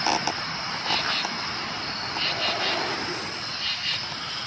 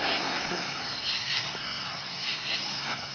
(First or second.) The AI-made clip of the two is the second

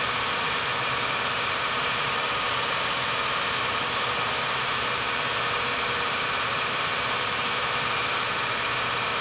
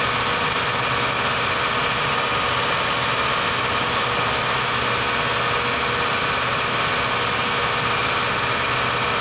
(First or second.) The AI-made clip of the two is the first